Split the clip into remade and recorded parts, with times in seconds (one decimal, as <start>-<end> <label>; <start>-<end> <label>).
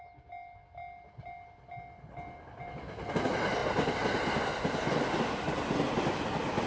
0.0-6.7 recorded